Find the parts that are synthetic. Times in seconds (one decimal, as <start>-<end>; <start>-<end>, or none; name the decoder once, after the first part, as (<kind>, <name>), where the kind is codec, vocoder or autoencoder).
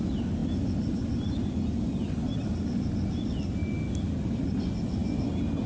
none